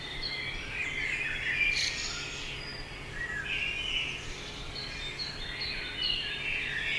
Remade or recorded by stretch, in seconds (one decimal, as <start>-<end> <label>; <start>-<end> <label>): 0.0-7.0 recorded